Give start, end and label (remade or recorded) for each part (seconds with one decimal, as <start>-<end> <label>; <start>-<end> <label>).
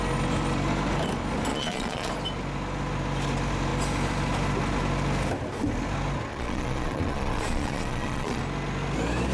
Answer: 0.0-1.5 recorded; 1.5-2.1 remade; 2.1-6.3 recorded; 6.3-8.4 remade; 8.4-9.3 recorded